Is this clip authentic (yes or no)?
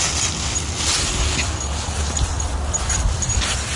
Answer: yes